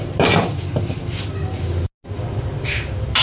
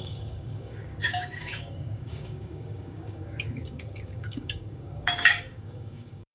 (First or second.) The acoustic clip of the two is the first